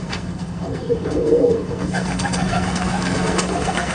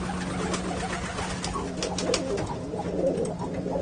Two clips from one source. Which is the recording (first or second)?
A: second